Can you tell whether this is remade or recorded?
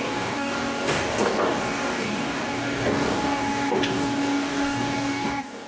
remade